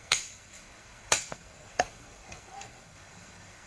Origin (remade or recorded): remade